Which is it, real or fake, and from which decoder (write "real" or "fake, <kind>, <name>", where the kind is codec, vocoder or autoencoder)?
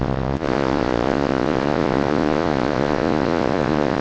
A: fake, vocoder, Vocos